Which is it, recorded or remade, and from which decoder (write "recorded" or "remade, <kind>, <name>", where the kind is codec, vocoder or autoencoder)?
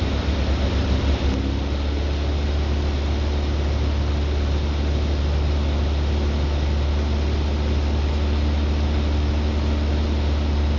recorded